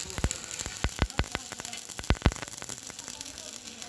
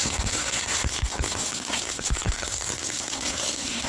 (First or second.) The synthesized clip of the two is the second